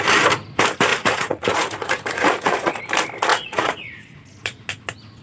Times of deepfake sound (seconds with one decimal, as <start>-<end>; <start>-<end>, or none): 0.9-2.8; 3.3-4.7